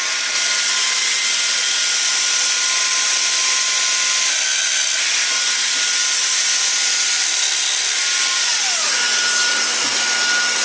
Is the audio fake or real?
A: real